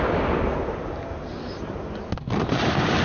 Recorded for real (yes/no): yes